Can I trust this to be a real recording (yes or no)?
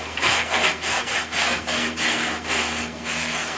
no